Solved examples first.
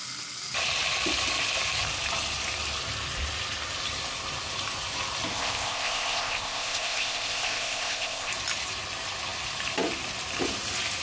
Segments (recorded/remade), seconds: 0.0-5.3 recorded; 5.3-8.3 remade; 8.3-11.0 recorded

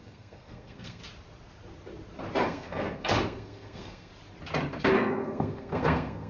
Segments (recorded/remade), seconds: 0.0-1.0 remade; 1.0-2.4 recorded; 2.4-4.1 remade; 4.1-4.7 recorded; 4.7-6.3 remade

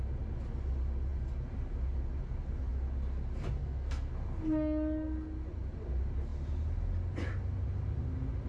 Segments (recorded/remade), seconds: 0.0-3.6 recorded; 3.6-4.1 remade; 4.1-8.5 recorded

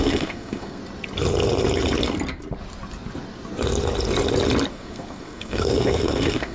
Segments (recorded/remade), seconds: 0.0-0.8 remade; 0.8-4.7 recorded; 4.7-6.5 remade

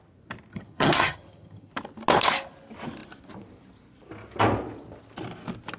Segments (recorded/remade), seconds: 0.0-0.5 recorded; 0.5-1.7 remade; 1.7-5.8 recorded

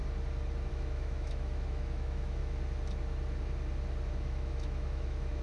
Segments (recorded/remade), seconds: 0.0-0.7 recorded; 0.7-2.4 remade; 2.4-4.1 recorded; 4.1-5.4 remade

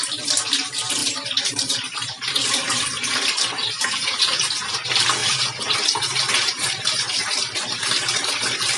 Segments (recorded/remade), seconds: 0.0-1.0 recorded; 1.0-4.2 remade; 4.2-5.2 recorded; 5.2-8.8 remade

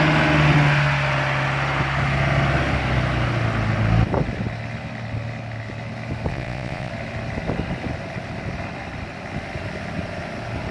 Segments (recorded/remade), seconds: 0.0-6.3 recorded; 6.3-6.9 remade; 6.9-10.7 recorded